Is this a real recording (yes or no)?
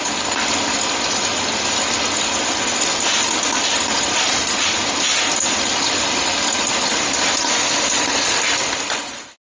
yes